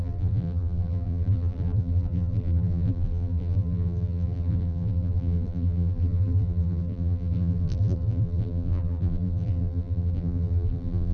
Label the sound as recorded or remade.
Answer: remade